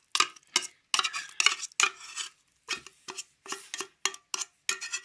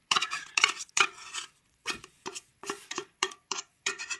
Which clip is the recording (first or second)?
first